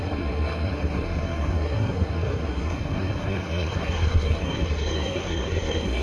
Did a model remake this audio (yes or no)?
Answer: yes